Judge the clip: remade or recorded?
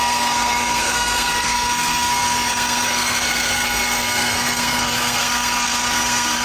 remade